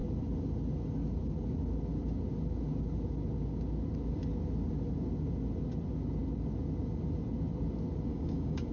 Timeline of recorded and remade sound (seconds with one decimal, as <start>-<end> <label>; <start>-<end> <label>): 0.0-8.1 recorded; 8.1-8.7 remade